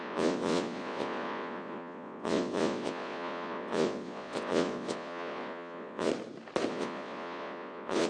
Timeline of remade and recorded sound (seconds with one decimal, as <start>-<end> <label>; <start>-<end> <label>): 0.0-6.1 remade; 6.1-6.7 recorded; 6.7-8.1 remade